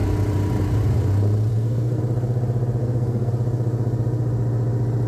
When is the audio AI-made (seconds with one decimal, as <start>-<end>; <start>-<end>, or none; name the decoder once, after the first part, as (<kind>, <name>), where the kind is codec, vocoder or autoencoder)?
1.5-2.0 (codec, SNAC); 2.8-3.3